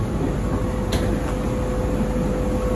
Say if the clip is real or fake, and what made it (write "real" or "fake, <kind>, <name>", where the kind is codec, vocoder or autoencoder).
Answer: real